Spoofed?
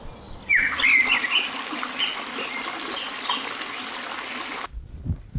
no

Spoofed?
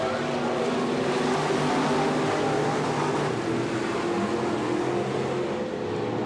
no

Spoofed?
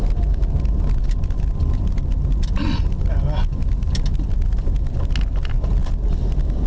no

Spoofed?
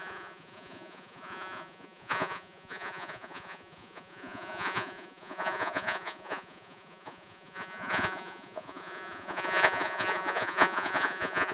yes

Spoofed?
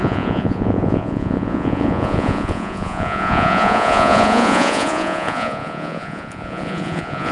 yes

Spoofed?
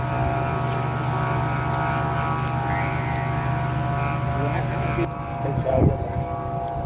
no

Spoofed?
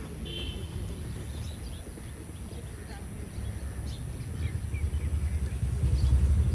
no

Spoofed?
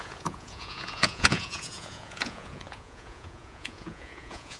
yes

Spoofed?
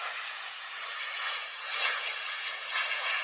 yes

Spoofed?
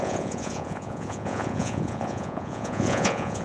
yes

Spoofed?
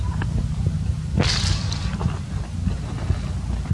no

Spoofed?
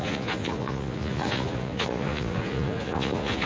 yes